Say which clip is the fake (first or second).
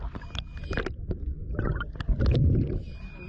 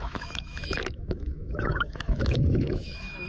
second